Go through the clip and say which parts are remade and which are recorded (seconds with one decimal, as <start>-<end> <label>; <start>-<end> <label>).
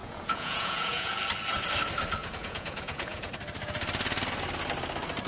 0.0-1.2 remade; 1.2-2.2 recorded; 2.2-3.3 remade; 3.3-5.3 recorded